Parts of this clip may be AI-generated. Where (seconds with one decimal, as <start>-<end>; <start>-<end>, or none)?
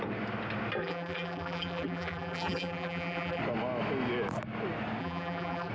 0.8-3.4; 5.0-5.7